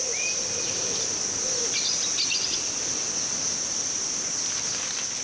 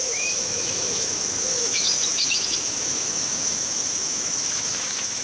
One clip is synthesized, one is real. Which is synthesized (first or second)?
second